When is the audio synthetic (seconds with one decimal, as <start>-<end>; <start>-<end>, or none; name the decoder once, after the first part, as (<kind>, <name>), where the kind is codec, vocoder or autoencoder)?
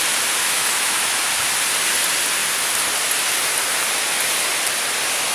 0.4-1.2 (autoencoder, DAC-VAE)